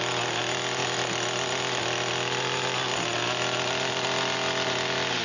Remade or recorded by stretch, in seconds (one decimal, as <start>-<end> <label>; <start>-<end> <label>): 0.0-5.2 recorded